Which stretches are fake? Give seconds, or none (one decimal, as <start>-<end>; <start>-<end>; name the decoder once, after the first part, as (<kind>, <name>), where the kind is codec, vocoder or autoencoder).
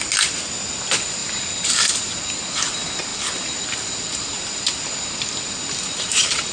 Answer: 1.2-2.2 (vocoder, BigVGAN v2)